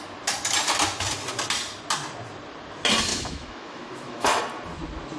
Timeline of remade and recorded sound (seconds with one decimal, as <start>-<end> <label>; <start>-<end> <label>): 0.0-3.1 recorded; 3.1-4.4 remade; 4.4-5.2 recorded